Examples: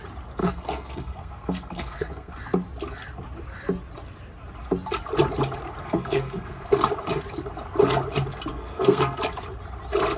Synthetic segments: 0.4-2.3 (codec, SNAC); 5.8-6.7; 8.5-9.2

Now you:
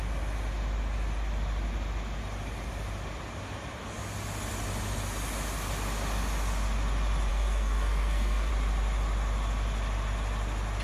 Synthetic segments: 7.3-8.5 (codec, SNAC)